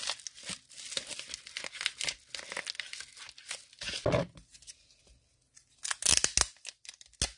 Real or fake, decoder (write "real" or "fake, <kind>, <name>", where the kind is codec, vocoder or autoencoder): real